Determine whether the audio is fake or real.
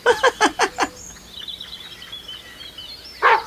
real